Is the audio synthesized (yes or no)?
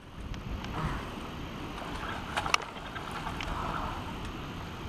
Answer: no